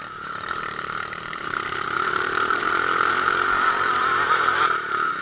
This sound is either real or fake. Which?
fake